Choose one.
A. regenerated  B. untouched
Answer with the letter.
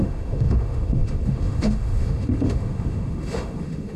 A